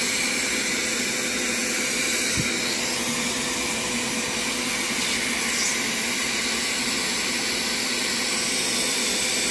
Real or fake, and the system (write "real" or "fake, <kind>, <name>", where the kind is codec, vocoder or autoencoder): real